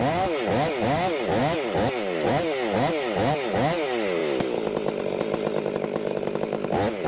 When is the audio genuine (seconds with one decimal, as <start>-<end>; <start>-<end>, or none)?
0.0-7.1